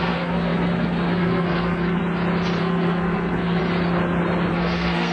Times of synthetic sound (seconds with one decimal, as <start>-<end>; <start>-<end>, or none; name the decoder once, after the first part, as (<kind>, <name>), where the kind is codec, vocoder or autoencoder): 0.0-2.0 (codec, SNAC); 2.6-3.6; 4.5-5.1